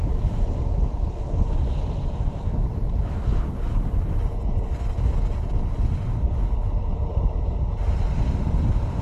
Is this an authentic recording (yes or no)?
yes